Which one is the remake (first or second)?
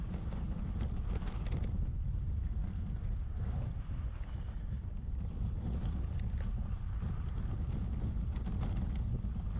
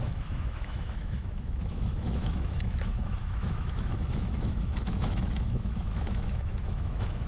second